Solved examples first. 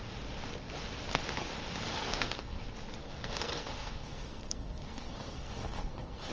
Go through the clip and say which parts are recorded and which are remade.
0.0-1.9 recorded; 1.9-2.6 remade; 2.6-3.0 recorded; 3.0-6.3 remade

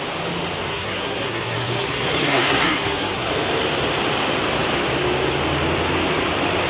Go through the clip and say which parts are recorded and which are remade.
0.0-0.7 recorded; 0.7-3.3 remade; 3.3-6.7 recorded

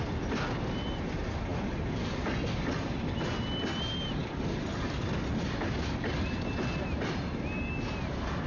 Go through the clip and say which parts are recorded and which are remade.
0.0-8.5 recorded

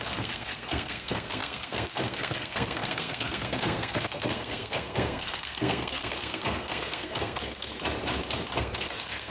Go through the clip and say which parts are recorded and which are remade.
0.0-7.7 remade; 7.7-8.6 recorded; 8.6-9.3 remade